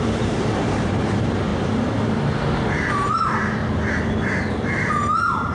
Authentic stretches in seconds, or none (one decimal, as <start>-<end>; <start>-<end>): 1.5-2.5; 3.6-4.5